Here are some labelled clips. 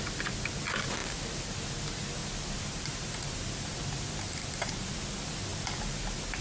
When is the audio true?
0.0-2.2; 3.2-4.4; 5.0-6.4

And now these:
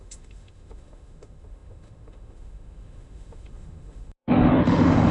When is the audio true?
none

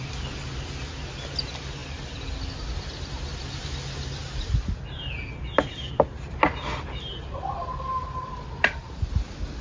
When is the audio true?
0.0-9.6

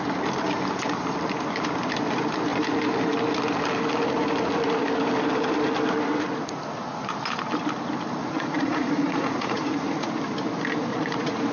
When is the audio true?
0.0-8.2; 10.1-10.9

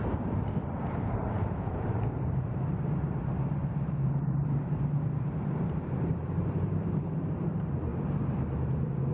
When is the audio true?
7.9-9.1

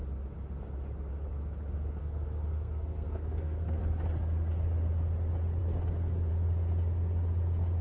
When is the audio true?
0.0-2.0; 3.8-7.8

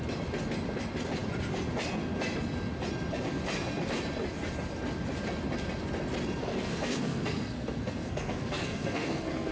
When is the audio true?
0.0-6.4